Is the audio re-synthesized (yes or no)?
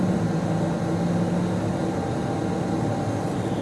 no